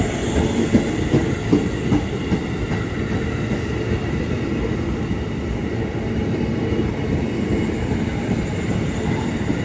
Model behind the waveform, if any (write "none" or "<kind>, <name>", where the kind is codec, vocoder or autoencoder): none